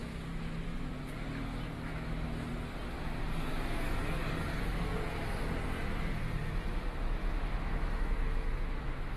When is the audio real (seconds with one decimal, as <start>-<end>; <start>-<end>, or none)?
0.0-1.9; 2.5-3.5; 4.2-7.2